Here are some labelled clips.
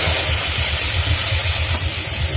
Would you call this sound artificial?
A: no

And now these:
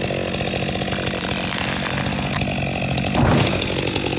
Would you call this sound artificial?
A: no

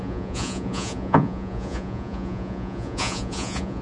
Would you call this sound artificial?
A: yes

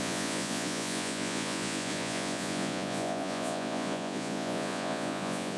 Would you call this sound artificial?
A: yes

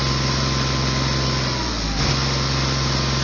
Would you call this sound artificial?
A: no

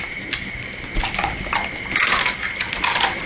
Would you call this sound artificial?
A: no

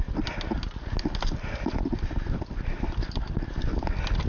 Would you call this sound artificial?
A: no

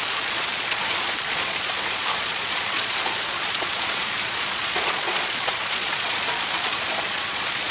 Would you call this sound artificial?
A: yes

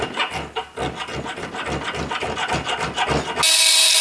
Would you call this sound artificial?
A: no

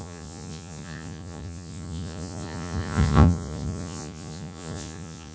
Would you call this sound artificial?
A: yes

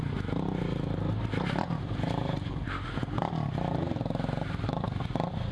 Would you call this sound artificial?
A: no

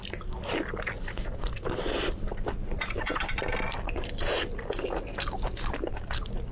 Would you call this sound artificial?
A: no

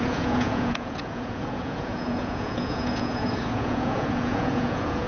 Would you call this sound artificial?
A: yes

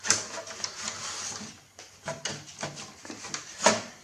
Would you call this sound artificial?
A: no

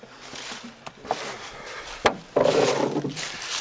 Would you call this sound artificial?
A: no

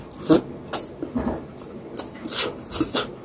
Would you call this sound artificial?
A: no